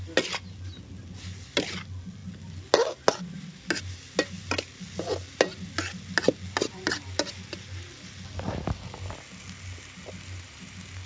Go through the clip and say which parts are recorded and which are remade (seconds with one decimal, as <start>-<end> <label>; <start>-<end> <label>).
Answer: 0.0-11.1 recorded